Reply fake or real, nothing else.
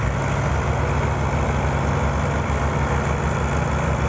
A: real